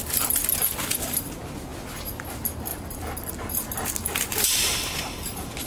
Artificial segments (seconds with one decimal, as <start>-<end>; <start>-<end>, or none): none